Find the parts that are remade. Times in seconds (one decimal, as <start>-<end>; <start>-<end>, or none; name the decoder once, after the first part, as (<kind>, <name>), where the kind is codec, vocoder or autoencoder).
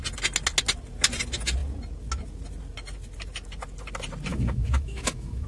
4.3-5.5 (autoencoder, DAC-VAE)